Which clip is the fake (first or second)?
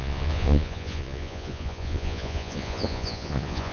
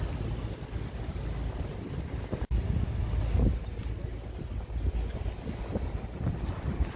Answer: first